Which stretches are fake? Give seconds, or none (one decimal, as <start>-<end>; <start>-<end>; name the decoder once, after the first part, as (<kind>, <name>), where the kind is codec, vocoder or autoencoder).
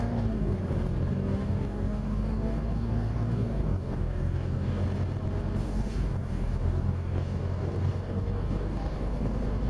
0.0-0.6 (codec, DAC); 1.1-4.8; 5.6-9.7